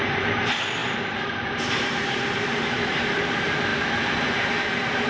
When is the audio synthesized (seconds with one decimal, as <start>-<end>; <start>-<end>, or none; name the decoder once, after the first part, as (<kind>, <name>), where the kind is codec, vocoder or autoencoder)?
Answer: 0.0-5.1 (vocoder, BigVGAN v2)

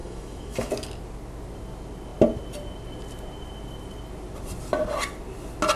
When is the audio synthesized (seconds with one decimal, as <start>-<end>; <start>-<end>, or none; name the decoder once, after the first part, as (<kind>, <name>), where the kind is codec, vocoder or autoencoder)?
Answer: 0.0-0.7 (autoencoder, DAC-VAE)

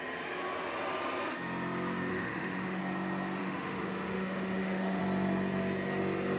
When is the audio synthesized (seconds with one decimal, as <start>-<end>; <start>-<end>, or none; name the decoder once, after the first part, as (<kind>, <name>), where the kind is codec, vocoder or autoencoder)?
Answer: 2.1-2.8 (autoencoder, DAC-VAE); 3.4-5.0

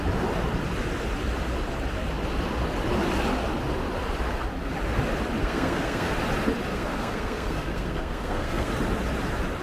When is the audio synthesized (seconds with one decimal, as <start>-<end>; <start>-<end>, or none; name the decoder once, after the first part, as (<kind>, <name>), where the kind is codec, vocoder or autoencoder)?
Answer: 5.4-6.1 (codec, SNAC); 6.7-8.7

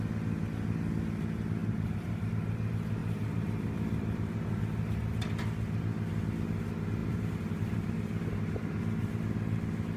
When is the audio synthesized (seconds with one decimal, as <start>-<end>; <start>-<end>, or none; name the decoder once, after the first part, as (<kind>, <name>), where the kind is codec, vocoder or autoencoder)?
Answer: 1.6-2.3 (vocoder, BigVGAN v2); 3.0-4.9; 7.0-8.8

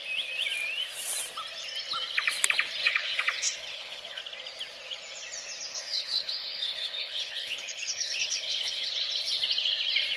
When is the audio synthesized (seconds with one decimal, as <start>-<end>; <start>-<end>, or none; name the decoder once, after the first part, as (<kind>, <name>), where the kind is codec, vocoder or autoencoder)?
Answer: 2.8-4.2 (codec, HILCodec); 5.7-8.9